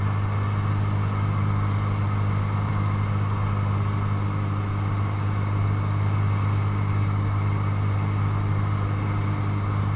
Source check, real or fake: real